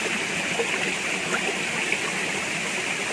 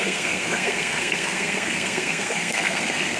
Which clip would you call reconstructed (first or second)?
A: second